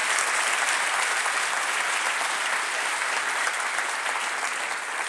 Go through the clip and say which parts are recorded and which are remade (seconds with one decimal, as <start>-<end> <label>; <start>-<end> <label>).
0.0-5.1 recorded